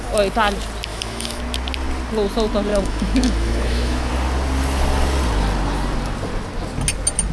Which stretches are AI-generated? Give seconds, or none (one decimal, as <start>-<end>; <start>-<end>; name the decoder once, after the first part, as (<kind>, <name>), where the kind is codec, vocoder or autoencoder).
0.9-1.4 (autoencoder, DAC-VAE); 2.7-4.1